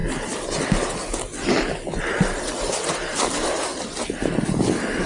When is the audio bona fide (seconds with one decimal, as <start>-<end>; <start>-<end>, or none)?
0.0-5.1